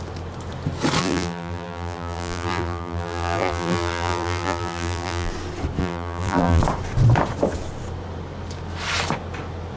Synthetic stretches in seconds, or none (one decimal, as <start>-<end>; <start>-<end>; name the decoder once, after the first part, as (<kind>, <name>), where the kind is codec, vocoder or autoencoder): 1.0-5.3 (vocoder, BigVGAN v2); 5.8-6.6